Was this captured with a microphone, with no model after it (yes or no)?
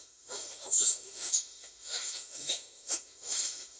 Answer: no